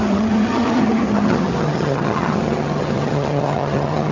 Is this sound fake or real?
fake